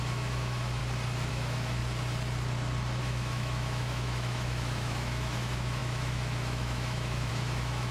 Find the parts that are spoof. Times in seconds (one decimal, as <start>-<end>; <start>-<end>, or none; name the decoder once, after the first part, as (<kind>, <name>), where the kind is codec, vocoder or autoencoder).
0.0-0.8 (autoencoder, DAC-VAE); 1.3-1.8; 3.0-7.9

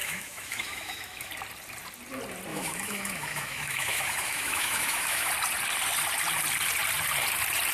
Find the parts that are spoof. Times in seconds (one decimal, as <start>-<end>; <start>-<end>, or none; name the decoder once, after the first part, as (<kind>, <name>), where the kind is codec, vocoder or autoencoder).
0.0-1.3 (autoencoder, DAC-VAE); 2.5-5.3

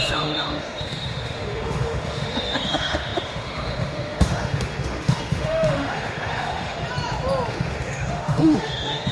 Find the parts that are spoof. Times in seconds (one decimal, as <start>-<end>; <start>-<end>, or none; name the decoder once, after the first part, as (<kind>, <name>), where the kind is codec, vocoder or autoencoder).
0.0-6.8 (autoencoder, DAC-VAE); 7.5-9.1

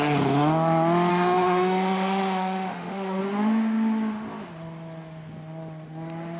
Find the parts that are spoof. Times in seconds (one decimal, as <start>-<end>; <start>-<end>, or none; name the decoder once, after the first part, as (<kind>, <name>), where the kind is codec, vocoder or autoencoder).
1.1-3.2 (autoencoder, DAC-VAE)